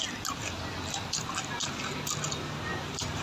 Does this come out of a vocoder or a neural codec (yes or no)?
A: no